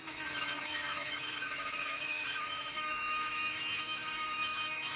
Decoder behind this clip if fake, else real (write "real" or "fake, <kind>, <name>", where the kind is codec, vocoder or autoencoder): fake, autoencoder, DAC-VAE